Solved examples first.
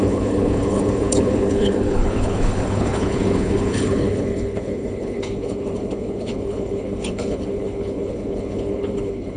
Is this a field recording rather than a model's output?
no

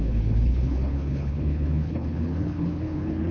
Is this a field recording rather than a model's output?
no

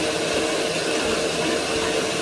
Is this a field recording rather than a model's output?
yes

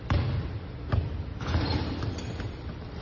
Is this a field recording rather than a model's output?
yes